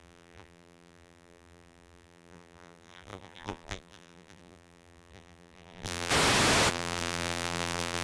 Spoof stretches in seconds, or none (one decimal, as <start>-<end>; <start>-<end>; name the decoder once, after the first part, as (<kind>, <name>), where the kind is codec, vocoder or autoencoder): 0.0-6.1 (vocoder, BigVGAN v2); 6.7-8.0